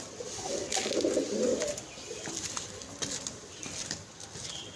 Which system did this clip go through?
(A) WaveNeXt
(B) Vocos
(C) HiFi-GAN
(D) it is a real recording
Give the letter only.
D